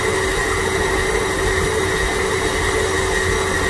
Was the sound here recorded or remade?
recorded